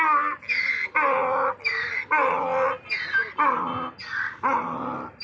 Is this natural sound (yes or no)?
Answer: yes